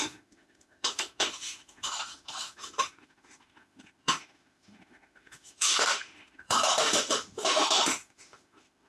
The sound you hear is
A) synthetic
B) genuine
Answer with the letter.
A